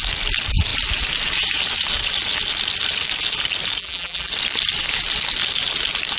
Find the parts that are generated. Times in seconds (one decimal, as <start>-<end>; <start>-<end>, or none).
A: 3.8-4.3